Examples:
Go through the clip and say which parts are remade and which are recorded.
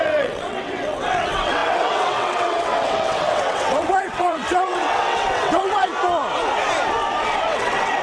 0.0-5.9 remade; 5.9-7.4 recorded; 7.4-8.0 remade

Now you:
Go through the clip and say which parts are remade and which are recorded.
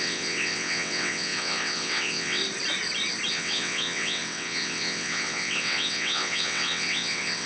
0.0-2.4 remade; 2.4-3.3 recorded; 3.3-7.5 remade